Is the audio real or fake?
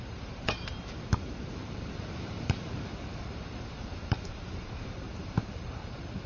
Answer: fake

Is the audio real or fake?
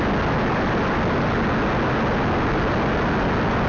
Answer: real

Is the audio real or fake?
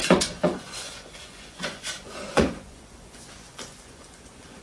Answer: fake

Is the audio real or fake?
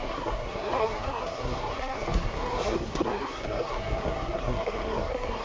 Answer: fake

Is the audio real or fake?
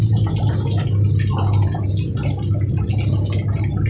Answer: real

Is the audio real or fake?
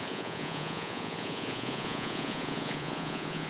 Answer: fake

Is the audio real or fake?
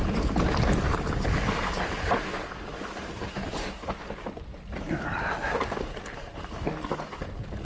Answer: real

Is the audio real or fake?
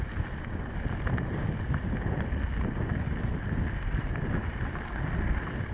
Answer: real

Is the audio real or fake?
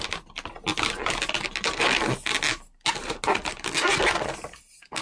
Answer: real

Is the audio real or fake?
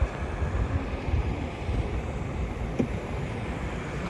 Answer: fake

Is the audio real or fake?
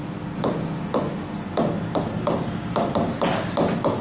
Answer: real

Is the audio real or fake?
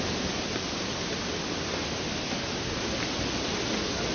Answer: real